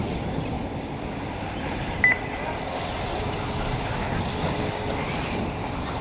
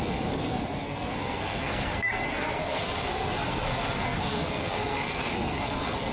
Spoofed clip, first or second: second